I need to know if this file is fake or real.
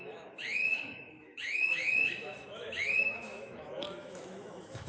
fake